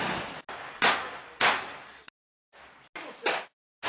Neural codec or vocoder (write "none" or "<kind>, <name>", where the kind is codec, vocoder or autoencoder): none